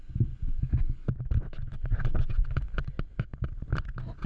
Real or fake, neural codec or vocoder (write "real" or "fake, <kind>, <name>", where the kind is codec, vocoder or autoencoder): real